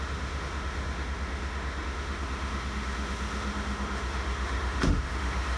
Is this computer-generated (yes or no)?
yes